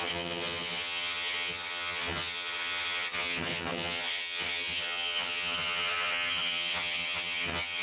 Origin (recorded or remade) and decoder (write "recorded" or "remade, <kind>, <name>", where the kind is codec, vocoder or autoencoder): remade, vocoder, HiFi-GAN